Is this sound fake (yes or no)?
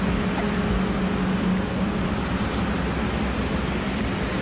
no